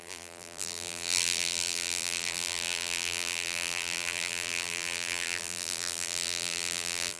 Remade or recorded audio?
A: remade